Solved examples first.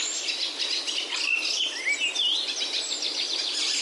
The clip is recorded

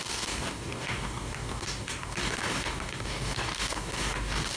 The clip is remade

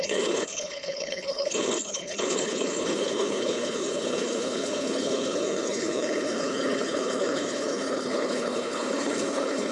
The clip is remade